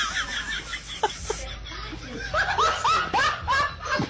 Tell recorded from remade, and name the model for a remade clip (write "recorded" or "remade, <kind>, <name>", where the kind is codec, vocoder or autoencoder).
recorded